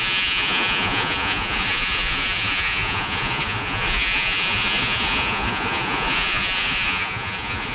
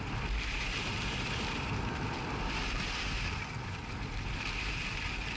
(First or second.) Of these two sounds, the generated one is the first